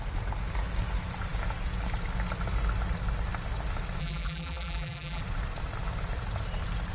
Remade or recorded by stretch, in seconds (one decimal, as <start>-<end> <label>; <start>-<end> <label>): 0.0-4.0 recorded; 4.0-5.2 remade; 5.2-6.9 recorded